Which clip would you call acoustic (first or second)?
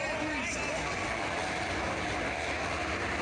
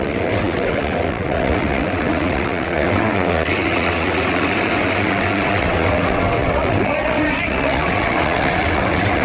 first